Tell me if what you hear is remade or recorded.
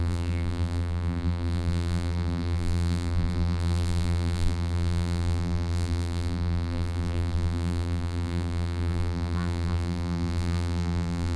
remade